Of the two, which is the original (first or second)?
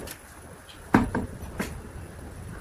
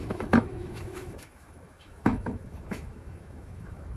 first